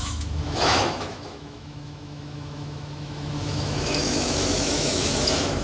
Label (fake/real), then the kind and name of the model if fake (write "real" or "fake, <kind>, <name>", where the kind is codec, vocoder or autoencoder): fake, autoencoder, DAC-VAE